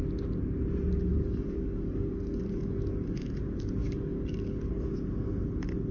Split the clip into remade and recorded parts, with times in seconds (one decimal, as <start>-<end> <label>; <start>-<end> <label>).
0.0-1.1 recorded; 1.1-3.3 remade; 3.3-3.8 recorded; 3.8-4.7 remade; 4.7-5.9 recorded